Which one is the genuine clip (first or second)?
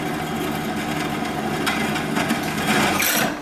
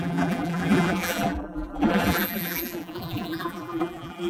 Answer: first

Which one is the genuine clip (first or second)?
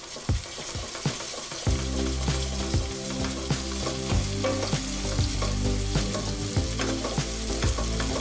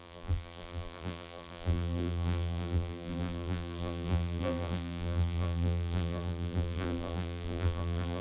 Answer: first